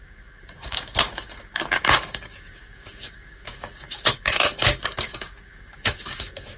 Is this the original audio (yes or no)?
no